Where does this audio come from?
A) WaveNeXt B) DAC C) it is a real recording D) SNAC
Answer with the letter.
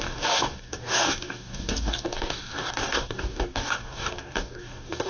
B